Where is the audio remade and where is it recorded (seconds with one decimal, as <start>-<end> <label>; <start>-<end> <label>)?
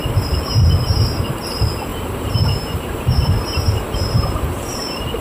0.0-1.9 recorded; 1.9-5.2 remade